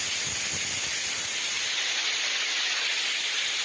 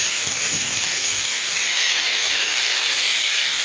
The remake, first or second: second